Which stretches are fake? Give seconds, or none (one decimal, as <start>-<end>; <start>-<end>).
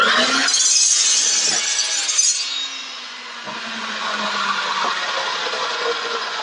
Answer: 2.8-4.2; 5.6-6.4